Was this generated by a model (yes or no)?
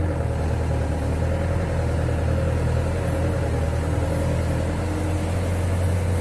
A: no